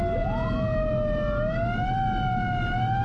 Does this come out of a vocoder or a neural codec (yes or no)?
no